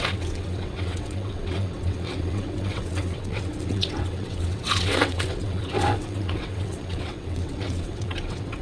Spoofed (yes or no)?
yes